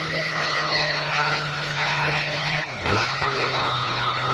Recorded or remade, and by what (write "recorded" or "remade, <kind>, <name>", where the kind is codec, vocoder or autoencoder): remade, codec, HILCodec